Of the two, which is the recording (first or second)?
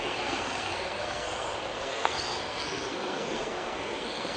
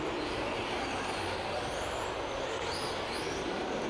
second